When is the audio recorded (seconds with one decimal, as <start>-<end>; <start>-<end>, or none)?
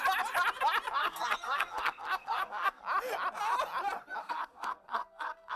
0.0-1.0; 2.8-4.2